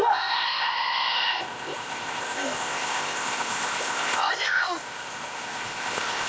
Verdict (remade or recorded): remade